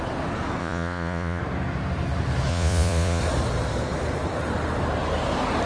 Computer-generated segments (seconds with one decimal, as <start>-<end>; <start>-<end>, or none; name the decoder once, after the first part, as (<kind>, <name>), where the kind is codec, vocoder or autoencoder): 0.6-1.4 (vocoder, Vocos); 2.5-3.2